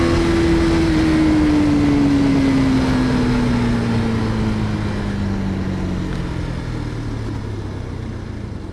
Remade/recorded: recorded